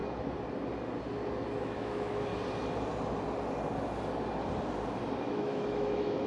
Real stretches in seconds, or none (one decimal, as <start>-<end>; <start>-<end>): 0.0-1.6; 2.3-5.2